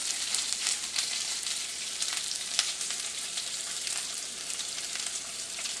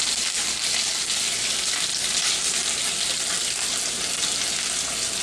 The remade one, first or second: first